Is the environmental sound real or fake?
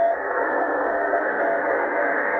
fake